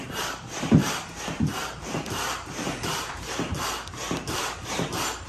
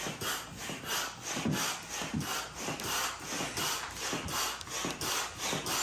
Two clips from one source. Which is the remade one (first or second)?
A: first